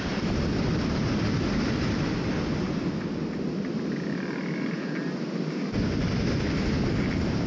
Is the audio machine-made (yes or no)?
no